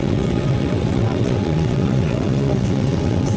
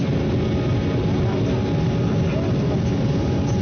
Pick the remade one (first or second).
first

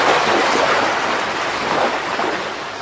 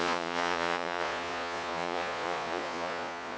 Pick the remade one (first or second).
second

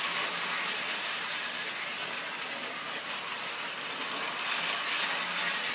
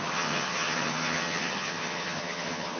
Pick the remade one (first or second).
second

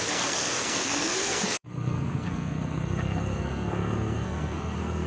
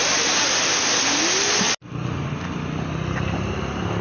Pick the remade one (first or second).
first